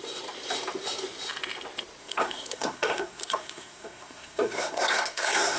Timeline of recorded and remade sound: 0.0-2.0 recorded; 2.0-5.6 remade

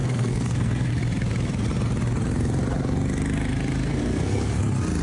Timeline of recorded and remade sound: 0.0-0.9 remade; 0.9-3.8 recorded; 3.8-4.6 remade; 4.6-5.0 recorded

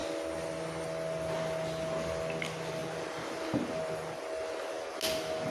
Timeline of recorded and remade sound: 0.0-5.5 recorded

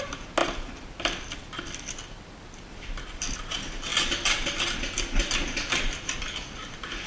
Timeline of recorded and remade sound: 0.0-7.1 recorded

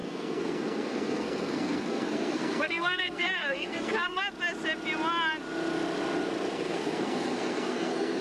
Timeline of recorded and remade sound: 0.0-4.2 remade; 4.2-6.5 recorded; 6.5-8.2 remade

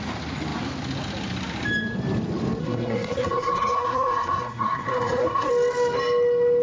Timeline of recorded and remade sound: 0.0-2.6 recorded; 2.6-5.5 remade; 5.5-6.6 recorded

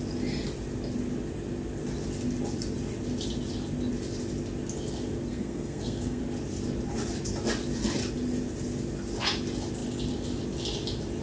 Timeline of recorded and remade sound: 0.0-5.3 recorded; 5.3-6.2 remade; 6.2-11.2 recorded

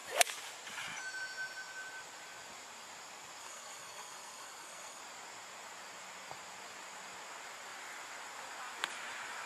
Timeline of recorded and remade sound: 0.0-3.4 recorded; 3.4-5.0 remade; 5.0-9.5 recorded